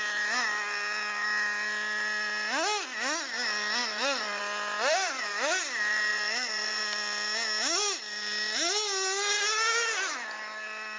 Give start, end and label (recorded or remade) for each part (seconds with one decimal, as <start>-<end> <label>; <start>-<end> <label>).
0.0-3.8 recorded; 3.8-4.4 remade; 4.4-6.1 recorded; 6.1-6.8 remade; 6.8-11.0 recorded